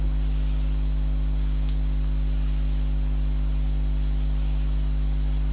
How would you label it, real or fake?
real